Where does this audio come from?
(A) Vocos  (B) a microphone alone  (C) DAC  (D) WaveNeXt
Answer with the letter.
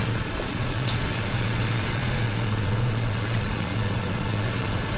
A